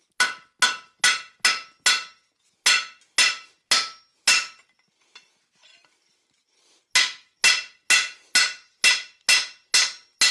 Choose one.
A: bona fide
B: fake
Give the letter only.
A